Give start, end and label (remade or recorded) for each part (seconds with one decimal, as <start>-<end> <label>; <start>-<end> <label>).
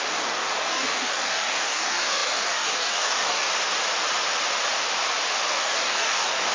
0.0-3.5 remade; 3.5-5.5 recorded; 5.5-6.5 remade